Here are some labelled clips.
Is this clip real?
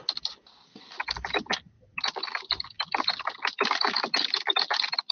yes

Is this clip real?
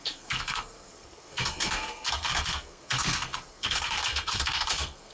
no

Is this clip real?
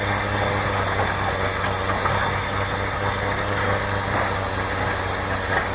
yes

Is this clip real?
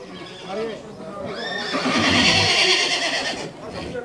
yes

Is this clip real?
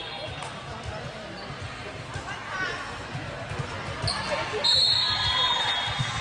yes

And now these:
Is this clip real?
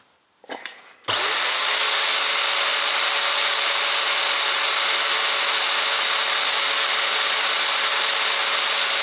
yes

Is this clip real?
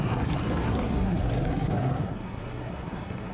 no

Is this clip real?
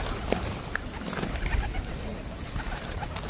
yes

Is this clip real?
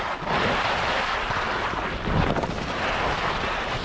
yes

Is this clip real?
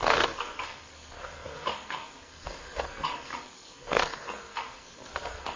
no